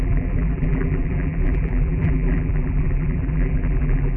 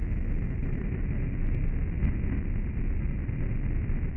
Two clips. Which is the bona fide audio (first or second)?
second